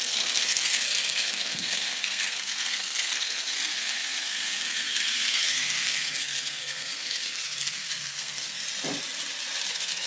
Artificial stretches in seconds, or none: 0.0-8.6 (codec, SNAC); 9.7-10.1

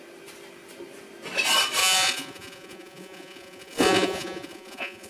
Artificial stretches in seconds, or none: 1.8-5.1 (vocoder, Vocos)

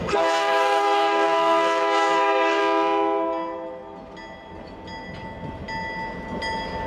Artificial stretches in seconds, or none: 0.0-2.6 (codec, SNAC)

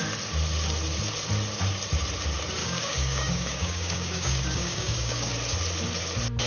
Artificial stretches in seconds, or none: 2.6-5.3 (codec, DAC)